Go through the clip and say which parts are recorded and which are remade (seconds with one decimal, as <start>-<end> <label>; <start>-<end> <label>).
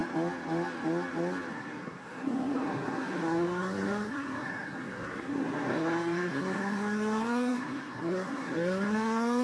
0.0-1.5 recorded; 1.5-9.4 remade